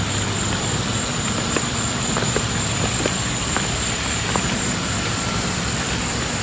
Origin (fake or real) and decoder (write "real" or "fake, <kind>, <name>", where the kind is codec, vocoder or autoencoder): fake, vocoder, BigVGAN v2